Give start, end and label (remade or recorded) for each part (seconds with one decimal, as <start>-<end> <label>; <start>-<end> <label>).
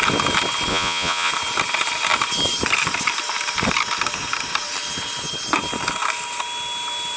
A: 0.0-0.7 recorded; 0.7-1.3 remade; 1.3-7.2 recorded